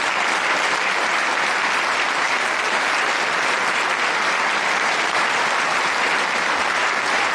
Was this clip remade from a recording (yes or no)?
no